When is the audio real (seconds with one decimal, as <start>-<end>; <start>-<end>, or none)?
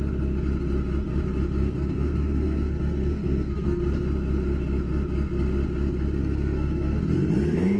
0.0-1.6; 3.8-6.2; 7.0-7.8